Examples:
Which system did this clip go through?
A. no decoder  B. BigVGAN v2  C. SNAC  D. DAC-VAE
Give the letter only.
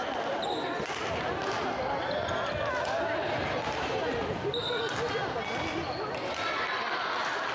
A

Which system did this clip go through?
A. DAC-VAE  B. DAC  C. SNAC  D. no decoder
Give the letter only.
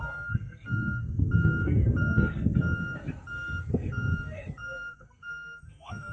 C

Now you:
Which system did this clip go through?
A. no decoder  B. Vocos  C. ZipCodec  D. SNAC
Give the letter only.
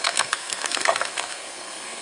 D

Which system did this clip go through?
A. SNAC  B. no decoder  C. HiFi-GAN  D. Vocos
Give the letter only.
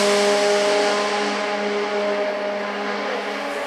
B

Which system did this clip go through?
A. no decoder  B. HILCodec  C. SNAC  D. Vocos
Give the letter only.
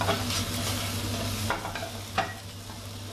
A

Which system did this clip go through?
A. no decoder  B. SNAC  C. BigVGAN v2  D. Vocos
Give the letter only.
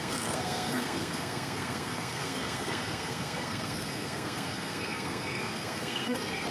B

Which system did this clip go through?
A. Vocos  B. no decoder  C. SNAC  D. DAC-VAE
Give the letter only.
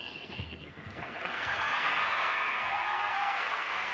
C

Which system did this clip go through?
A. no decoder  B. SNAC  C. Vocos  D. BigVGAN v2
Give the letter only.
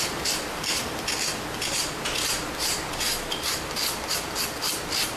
A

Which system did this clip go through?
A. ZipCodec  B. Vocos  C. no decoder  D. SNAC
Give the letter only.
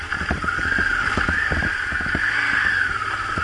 C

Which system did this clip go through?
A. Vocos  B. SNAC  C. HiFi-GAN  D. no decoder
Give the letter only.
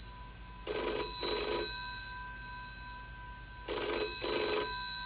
D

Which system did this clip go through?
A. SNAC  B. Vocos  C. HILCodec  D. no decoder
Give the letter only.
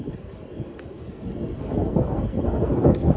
A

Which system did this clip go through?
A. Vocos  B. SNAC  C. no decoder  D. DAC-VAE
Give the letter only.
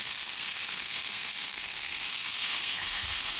B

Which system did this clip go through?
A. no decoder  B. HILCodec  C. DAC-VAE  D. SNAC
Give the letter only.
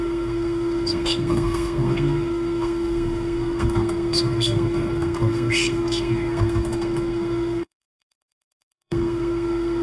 D